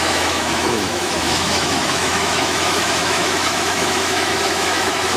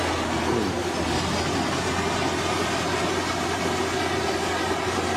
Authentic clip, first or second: second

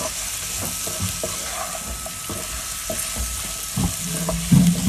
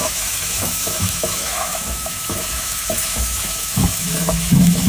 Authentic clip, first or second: first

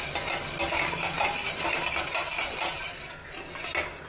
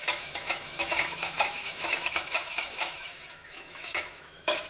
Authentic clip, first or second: first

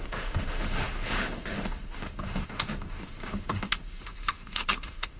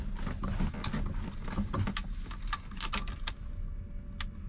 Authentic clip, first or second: second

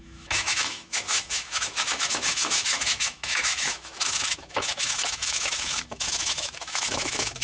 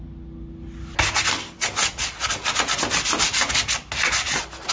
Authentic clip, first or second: second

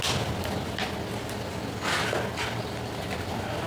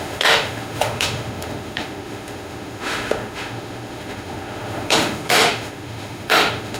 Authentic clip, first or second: first